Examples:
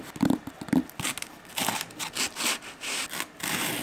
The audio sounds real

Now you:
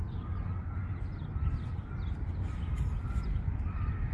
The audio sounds real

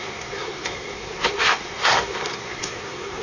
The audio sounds fake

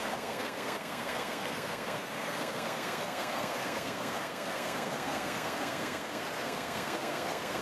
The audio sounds fake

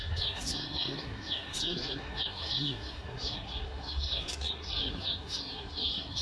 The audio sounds fake